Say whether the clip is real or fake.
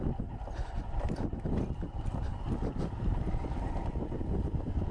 real